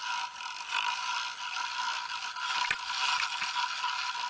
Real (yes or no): yes